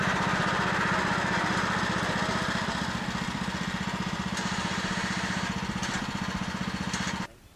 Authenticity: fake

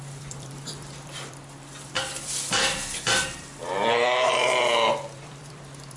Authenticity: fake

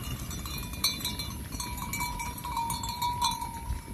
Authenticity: real